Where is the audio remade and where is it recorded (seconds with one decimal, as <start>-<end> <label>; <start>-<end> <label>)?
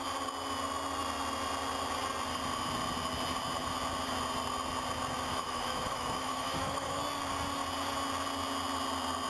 0.0-5.3 recorded; 5.3-7.0 remade; 7.0-9.3 recorded